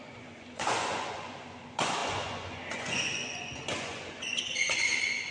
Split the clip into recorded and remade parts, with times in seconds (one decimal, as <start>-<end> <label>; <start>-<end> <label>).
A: 0.0-5.3 remade